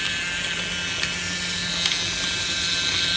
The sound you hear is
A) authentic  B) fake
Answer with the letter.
A